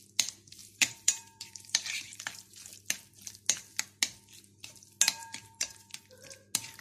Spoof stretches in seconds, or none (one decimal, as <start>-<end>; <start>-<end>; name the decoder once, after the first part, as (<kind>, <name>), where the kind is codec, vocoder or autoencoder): 0.6-2.7 (vocoder, BigVGAN v2); 5.2-6.0